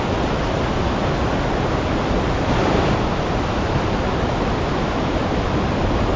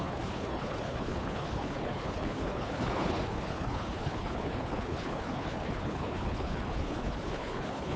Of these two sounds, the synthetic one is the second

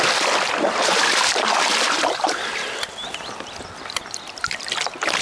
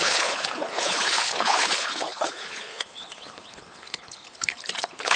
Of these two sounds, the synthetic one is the second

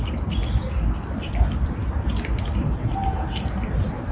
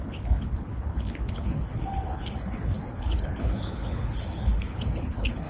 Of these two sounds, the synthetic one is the second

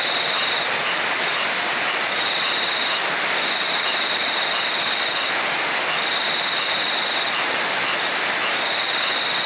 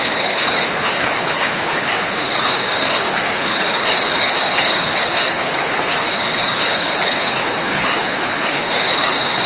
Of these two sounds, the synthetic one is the second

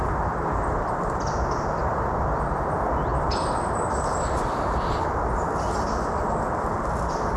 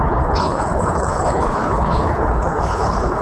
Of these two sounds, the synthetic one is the second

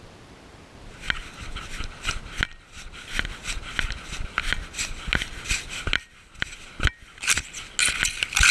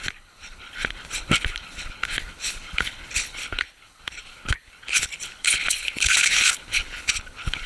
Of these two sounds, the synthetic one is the second